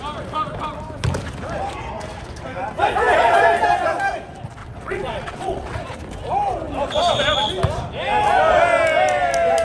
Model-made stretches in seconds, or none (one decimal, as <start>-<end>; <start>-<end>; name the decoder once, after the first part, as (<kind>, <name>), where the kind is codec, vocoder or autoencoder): 4.6-5.8 (vocoder, WaveNeXt)